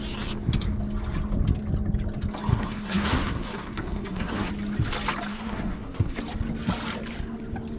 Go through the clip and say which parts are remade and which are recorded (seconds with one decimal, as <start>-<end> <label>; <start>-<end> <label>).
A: 0.0-2.5 recorded; 2.5-4.5 remade; 4.5-5.3 recorded; 5.3-6.2 remade; 6.2-7.8 recorded